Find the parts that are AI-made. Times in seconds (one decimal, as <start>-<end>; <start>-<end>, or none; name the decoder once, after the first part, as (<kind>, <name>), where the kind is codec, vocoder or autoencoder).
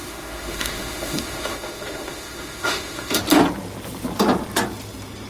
0.0-3.2 (autoencoder, DAC-VAE)